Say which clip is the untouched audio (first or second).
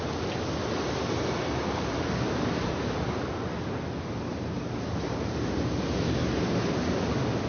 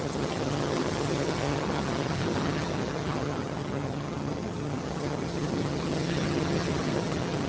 first